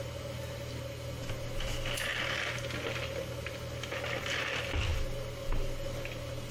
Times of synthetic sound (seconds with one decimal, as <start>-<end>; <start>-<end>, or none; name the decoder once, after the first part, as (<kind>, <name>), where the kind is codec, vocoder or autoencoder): none